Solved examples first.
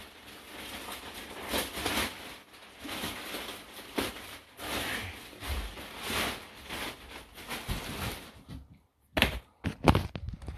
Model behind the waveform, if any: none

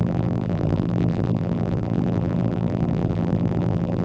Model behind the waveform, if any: vocoder, BigVGAN v2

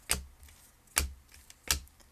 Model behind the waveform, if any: none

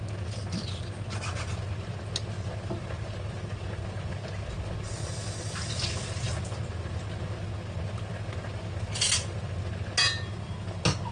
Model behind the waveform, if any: none